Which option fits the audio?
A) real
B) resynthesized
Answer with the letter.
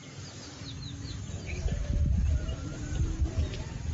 B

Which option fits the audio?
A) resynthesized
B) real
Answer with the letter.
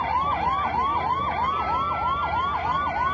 B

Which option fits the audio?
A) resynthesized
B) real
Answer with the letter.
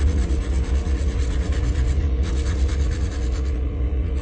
A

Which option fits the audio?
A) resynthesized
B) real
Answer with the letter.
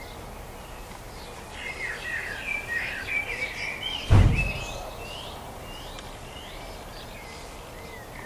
B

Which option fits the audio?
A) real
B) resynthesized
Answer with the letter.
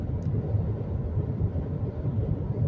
A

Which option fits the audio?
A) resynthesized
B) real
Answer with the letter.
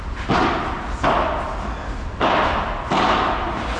B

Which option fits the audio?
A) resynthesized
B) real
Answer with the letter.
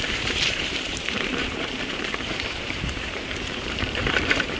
A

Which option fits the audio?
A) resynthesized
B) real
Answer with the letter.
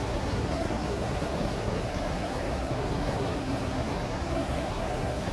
A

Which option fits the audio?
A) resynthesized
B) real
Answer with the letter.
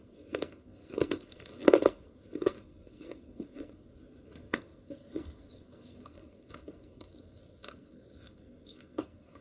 A